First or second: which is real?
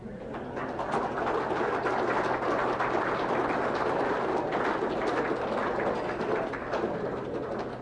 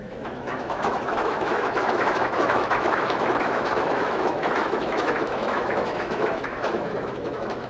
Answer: first